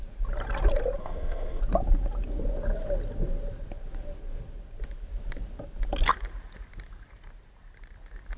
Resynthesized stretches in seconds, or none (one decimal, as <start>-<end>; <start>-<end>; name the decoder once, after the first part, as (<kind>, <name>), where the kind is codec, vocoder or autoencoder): 1.0-1.6 (codec, ZipCodec)